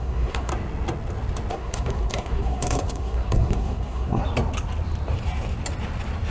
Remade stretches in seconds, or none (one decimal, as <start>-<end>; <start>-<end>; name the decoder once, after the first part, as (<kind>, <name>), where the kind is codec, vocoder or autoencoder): 0.0-0.5 (codec, SNAC); 1.5-4.2